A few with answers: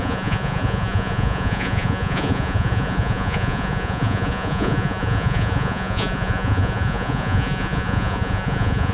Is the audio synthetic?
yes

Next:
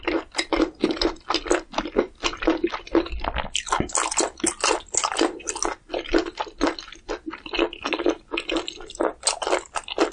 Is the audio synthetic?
no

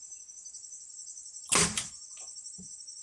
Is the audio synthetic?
no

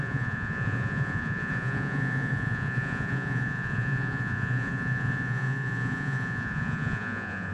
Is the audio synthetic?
yes